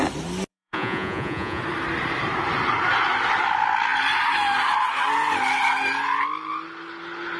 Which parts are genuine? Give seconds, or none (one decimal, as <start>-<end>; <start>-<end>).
0.0-0.5; 1.6-7.4